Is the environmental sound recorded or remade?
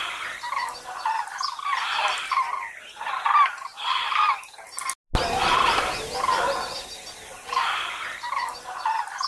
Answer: recorded